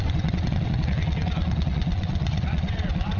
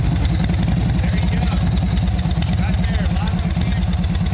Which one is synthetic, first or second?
first